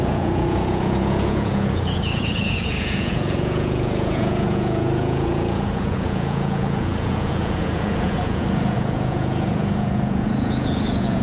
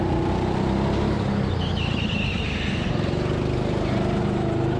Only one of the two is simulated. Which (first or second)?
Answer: first